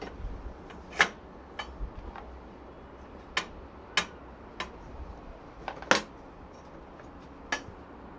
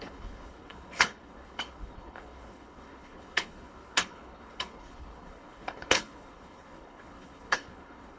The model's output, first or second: second